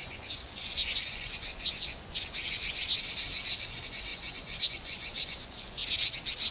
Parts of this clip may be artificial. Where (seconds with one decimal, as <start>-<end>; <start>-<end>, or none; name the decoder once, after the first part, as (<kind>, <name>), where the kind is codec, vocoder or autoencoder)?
0.0-2.9 (vocoder, Vocos); 3.6-5.8